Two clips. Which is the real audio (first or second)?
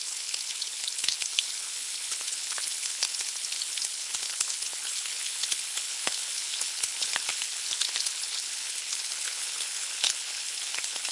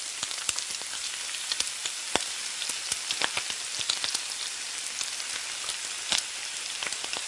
second